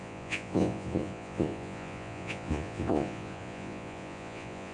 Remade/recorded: remade